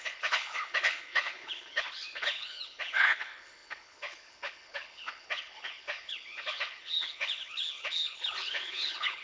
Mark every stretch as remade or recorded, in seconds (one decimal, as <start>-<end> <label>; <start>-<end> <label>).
0.0-9.2 remade